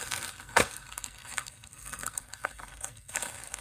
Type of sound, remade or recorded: remade